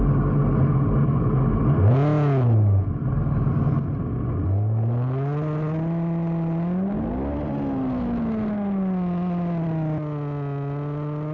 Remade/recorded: recorded